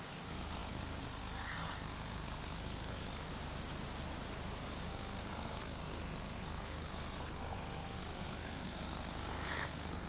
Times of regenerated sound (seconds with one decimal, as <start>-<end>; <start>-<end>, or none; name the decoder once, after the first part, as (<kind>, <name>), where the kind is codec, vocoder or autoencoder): 0.0-3.3 (codec, SNAC); 4.9-10.1